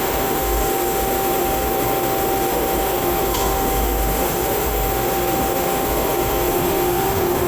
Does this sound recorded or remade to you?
remade